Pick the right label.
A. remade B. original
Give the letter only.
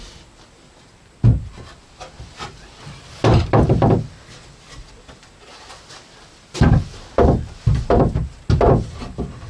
B